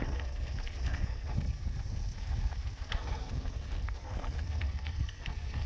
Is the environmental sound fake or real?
fake